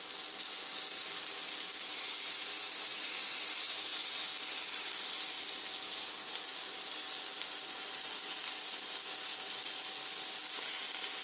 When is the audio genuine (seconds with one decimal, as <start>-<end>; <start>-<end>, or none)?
0.0-11.2